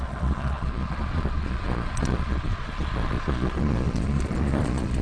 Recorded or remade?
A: remade